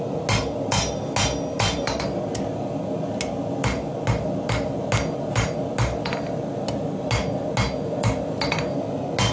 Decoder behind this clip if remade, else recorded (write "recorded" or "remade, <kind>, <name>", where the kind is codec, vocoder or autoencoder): recorded